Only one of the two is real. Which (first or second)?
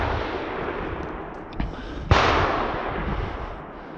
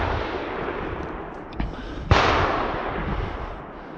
first